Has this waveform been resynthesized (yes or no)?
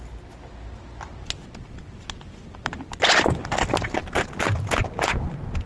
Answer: no